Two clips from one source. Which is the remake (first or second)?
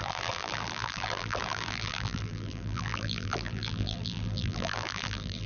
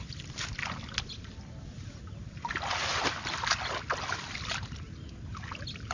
first